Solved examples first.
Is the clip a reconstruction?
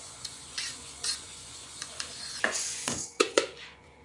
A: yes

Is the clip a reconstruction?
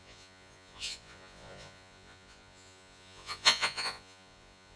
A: yes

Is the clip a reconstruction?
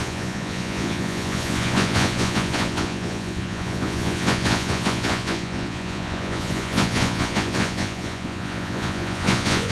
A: yes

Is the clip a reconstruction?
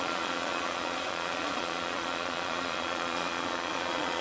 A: yes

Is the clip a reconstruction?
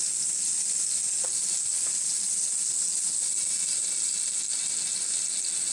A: no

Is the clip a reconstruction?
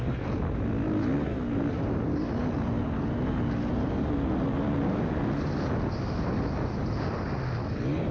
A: no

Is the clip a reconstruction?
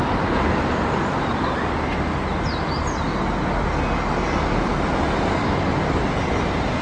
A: no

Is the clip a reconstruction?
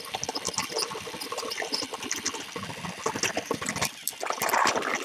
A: no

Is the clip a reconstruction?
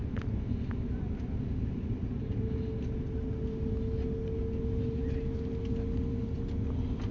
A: no